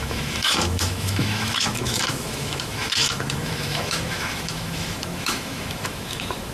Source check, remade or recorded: remade